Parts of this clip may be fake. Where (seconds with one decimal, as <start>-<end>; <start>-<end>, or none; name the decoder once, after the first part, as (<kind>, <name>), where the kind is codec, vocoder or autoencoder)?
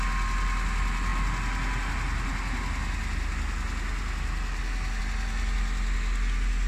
none